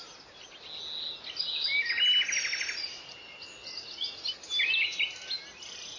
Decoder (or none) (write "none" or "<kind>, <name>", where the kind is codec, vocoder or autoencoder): none